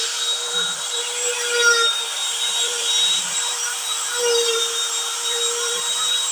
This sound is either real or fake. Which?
fake